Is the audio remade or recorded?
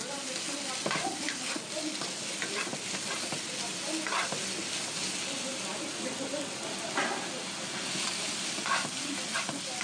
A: recorded